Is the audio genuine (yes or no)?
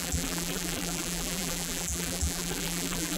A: no